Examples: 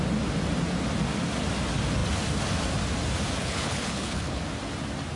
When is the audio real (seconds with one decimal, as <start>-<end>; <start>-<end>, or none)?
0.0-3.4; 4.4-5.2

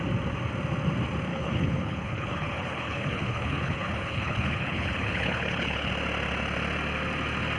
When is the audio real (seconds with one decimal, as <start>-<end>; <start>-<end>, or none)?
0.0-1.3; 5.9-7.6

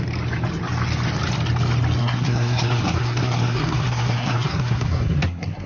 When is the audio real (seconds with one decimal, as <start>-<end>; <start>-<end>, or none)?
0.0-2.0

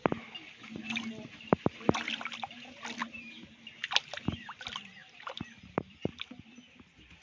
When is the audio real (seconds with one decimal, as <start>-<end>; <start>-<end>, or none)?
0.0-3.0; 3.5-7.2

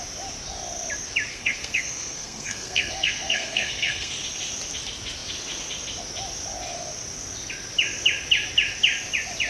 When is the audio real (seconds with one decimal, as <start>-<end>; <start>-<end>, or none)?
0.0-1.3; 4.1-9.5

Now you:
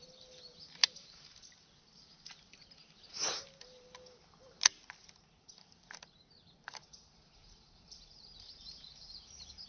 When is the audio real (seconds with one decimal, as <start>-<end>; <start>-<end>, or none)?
0.0-0.8; 1.5-2.8; 3.4-7.4

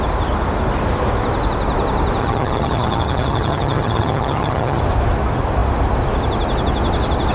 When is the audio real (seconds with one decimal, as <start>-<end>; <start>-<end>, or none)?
0.0-2.2; 4.8-7.3